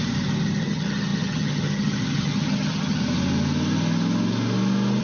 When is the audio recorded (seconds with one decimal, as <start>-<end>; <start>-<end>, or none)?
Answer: 0.0-0.6; 3.0-5.0